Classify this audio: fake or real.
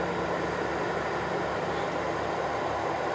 real